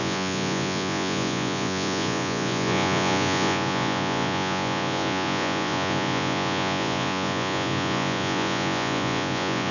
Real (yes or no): no